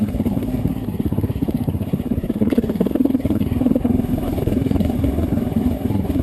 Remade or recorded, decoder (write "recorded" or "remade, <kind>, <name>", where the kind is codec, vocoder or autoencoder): remade, codec, SNAC